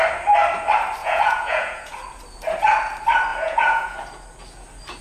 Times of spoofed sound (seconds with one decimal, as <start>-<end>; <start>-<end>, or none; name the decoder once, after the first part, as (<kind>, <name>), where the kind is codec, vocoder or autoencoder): 1.0-1.9 (vocoder, Vocos); 3.3-4.0